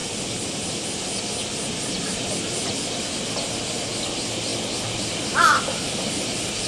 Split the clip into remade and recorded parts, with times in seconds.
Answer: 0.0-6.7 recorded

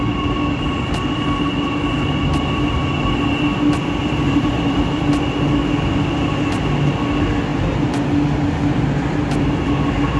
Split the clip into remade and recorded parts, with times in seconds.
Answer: 0.0-4.0 recorded; 4.0-5.6 remade; 5.6-10.2 recorded

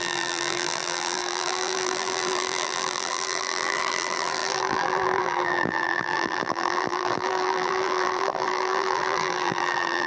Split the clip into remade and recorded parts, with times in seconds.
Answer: 0.0-10.1 remade

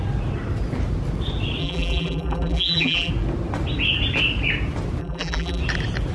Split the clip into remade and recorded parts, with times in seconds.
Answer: 0.0-1.6 recorded; 1.6-3.1 remade; 3.1-5.0 recorded; 5.0-5.6 remade; 5.6-6.1 recorded

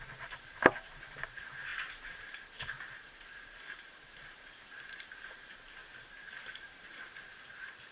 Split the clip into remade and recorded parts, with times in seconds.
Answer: 0.0-5.8 remade; 5.8-6.4 recorded; 6.4-7.9 remade

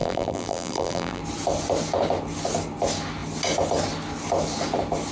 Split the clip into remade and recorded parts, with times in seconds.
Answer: 0.0-1.2 remade; 1.2-5.1 recorded